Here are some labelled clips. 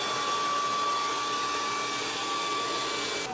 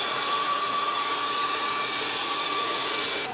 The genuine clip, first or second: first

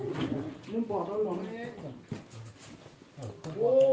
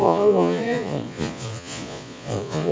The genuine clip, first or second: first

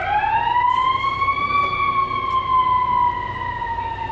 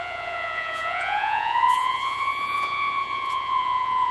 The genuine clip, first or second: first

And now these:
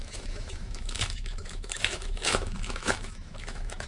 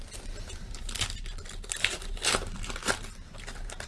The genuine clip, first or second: second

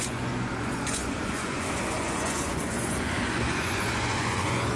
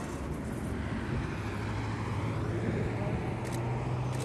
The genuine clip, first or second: second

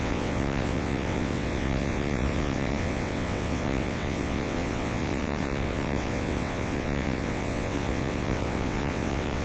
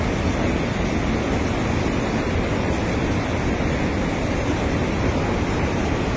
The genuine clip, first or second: second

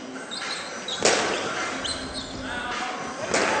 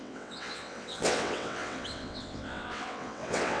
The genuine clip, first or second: first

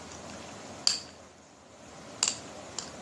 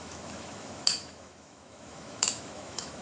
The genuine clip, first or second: first